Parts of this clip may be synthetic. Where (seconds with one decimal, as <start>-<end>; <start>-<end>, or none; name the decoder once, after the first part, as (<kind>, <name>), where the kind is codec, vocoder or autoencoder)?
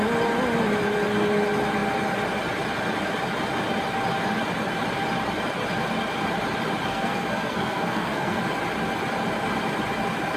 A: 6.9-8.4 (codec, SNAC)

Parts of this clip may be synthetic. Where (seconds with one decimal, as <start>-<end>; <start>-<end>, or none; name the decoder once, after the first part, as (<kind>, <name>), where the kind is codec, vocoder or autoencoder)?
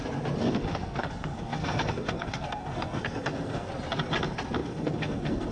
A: 0.4-3.7 (codec, SNAC); 4.6-5.5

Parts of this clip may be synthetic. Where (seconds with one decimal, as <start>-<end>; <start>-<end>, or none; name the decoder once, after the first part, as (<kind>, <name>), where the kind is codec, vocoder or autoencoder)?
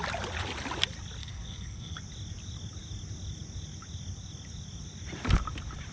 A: 1.2-2.0 (codec, SNAC)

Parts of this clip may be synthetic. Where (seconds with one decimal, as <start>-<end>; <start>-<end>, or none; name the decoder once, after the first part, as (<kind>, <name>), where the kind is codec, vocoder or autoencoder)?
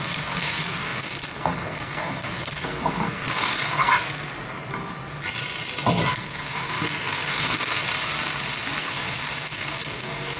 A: 0.0-3.9 (codec, SNAC); 6.1-7.9; 8.8-10.4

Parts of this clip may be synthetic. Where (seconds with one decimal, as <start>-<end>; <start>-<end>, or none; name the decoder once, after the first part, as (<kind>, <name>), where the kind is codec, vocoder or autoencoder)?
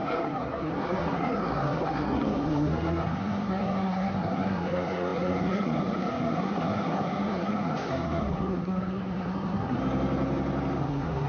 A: 0.0-9.8 (codec, SNAC); 10.8-11.3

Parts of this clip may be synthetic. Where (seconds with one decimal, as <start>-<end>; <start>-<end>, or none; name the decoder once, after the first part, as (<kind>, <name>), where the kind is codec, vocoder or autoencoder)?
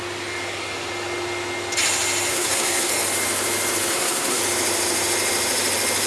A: 2.3-2.9 (codec, SNAC); 3.9-4.4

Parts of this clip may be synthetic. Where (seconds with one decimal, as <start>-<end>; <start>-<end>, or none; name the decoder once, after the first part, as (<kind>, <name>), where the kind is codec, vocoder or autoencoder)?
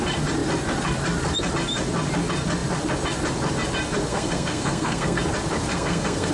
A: 4.1-5.2 (codec, SNAC); 5.7-6.3